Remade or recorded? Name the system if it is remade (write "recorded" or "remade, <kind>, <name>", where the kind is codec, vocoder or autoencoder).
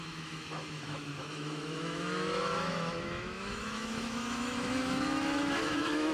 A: remade, autoencoder, DAC-VAE